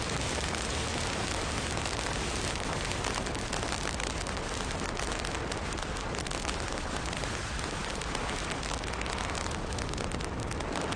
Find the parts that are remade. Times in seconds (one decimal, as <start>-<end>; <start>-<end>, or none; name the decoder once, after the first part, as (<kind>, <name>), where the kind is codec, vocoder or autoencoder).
none